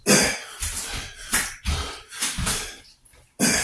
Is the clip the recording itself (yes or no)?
no